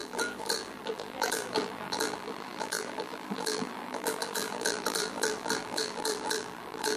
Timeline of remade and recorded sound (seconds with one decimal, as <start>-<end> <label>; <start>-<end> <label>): 0.0-7.0 remade